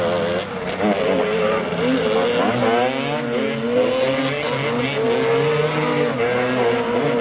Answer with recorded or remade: recorded